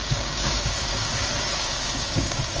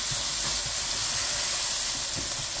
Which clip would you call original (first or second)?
second